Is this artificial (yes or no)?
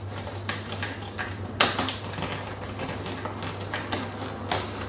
no